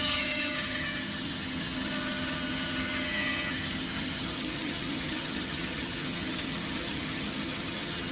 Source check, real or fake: fake